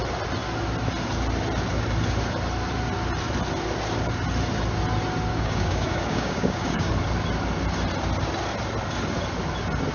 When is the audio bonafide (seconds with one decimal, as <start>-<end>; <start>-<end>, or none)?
0.0-5.3; 6.9-9.9